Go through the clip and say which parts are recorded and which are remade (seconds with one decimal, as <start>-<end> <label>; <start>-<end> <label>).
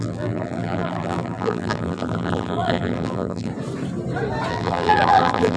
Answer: 0.0-3.5 remade; 3.5-4.5 recorded; 4.5-5.6 remade